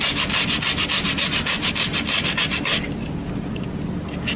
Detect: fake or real real